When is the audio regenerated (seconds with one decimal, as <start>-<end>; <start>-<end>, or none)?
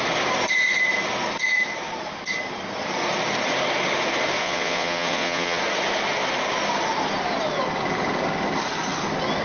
4.4-5.6